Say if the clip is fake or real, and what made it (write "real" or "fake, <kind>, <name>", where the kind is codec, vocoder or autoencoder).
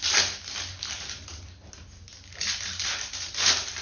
real